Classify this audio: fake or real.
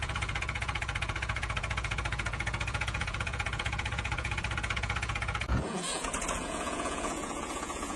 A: fake